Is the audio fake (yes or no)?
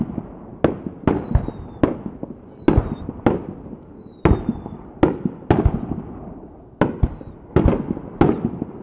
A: no